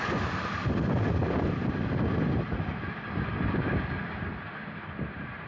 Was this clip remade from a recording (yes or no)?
no